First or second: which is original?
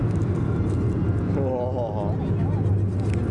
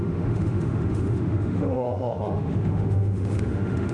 first